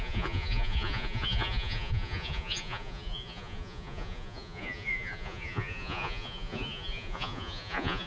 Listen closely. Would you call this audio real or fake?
fake